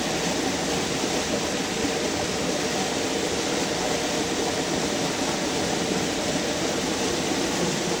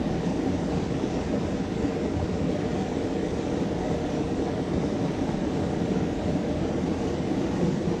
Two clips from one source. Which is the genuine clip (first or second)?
first